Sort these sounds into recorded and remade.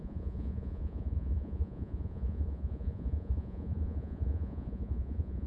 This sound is remade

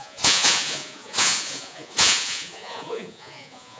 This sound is remade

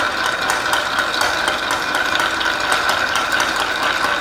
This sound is recorded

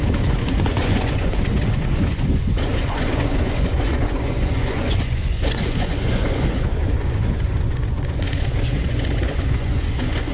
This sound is remade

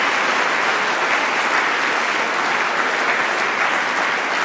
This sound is recorded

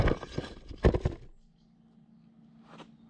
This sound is recorded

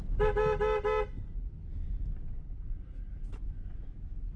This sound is recorded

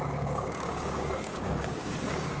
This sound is remade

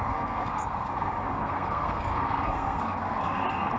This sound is remade